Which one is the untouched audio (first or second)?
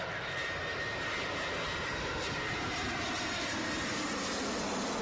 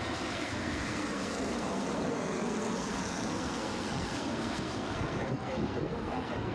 first